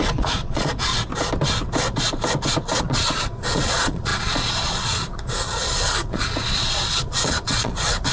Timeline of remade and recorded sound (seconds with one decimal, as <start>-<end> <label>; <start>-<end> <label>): 0.0-0.9 remade; 0.9-2.8 recorded; 2.8-8.1 remade